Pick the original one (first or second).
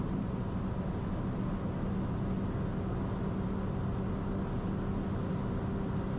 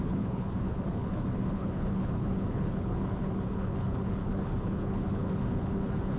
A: first